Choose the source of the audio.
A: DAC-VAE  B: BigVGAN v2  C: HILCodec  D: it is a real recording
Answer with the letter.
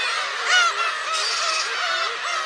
D